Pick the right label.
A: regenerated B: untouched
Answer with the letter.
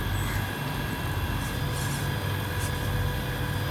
B